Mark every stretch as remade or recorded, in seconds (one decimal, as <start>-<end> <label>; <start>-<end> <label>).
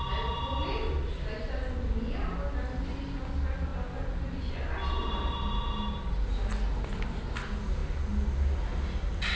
0.0-9.4 recorded